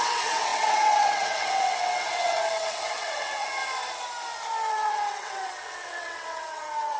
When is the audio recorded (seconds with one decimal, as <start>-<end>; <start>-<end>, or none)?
3.6-4.7